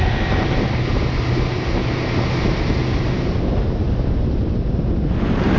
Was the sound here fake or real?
real